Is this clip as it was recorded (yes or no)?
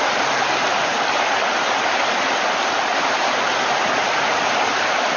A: yes